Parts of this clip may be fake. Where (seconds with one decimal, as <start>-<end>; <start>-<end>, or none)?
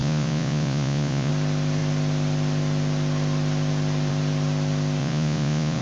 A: 0.0-1.3; 5.0-5.8